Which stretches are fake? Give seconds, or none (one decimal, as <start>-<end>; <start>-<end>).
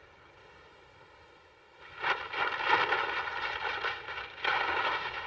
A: 0.0-0.7; 3.9-5.3